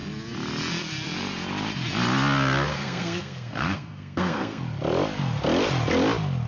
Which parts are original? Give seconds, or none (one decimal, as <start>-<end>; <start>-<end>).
0.0-2.7; 4.6-6.5